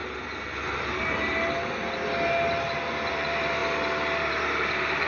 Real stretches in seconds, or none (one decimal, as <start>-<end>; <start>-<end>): 0.0-3.1; 3.6-4.2